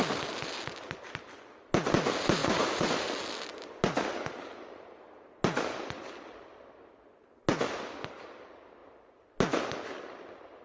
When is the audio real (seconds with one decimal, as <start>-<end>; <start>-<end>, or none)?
0.0-2.4; 2.9-10.6